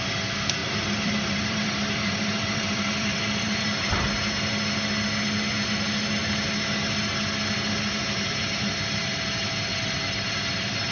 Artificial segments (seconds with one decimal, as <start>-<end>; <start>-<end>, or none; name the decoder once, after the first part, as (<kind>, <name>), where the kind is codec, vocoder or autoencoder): 0.6-4.1 (vocoder, BigVGAN v2); 9.7-10.9

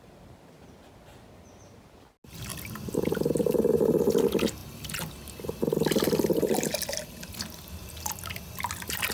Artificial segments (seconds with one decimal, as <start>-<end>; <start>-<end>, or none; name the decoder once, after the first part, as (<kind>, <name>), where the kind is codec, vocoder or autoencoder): none